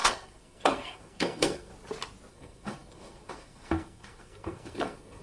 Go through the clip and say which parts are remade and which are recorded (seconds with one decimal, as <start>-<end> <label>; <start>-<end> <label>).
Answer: 0.0-1.7 remade; 1.7-2.3 recorded; 2.3-5.2 remade